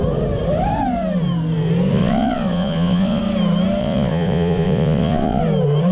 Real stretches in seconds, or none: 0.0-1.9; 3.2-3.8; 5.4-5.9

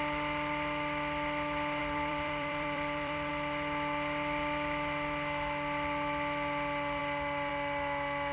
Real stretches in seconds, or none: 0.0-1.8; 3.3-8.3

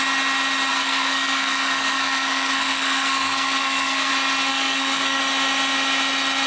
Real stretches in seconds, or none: 0.0-0.7; 4.1-4.5; 5.2-6.5

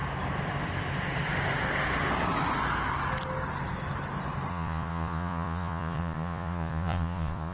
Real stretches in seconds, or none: 0.0-4.5

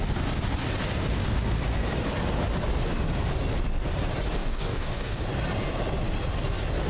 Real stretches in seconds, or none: 0.0-4.4; 5.2-6.9

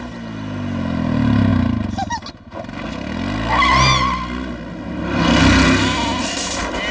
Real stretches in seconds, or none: 0.0-6.9